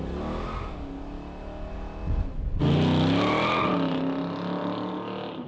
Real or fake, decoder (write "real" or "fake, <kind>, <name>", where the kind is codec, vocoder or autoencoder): real